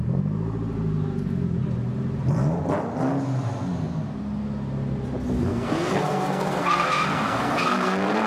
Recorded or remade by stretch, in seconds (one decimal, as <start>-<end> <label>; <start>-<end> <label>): 0.0-5.5 recorded; 5.5-8.3 remade